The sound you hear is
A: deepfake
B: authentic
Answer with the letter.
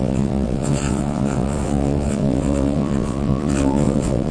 A